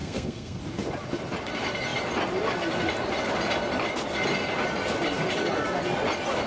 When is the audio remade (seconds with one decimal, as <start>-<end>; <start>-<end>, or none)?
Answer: 0.0-0.6